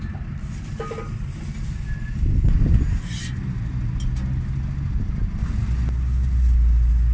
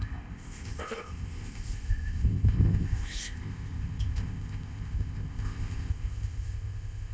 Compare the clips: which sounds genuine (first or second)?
first